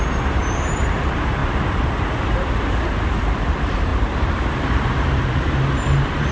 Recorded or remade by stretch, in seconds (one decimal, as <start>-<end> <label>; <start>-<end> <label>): 0.0-1.4 remade; 1.4-3.2 recorded; 3.2-6.3 remade